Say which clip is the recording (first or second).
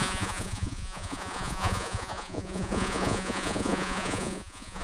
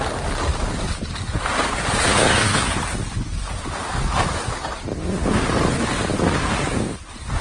second